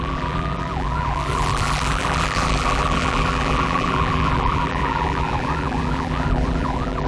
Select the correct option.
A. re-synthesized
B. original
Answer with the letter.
A